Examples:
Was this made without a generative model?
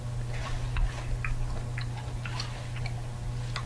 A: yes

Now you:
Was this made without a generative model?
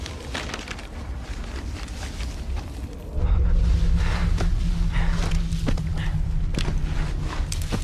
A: yes